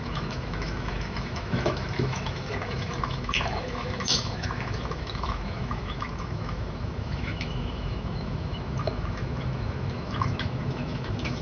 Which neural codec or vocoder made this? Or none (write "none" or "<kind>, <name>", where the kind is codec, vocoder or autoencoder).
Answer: autoencoder, DAC-VAE